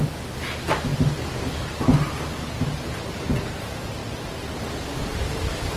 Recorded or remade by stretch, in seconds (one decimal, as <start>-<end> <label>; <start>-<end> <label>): 0.0-5.8 recorded